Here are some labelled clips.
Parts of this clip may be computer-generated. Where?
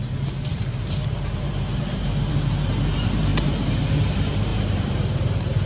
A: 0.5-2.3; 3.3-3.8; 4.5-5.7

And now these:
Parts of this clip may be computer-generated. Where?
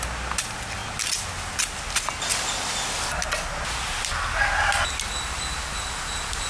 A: none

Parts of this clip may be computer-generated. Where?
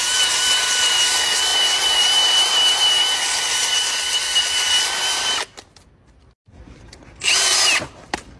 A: 0.0-8.4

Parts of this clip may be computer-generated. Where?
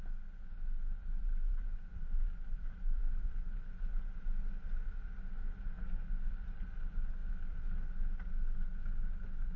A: 1.0-4.0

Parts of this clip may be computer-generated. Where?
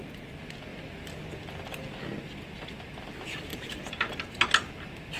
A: 3.5-4.1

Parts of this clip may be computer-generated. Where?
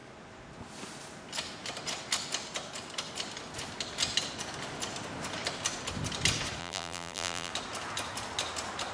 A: 6.6-7.5